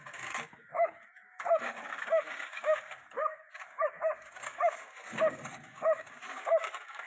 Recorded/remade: remade